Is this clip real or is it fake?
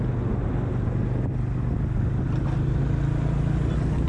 real